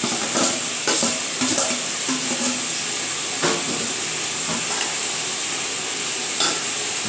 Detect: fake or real real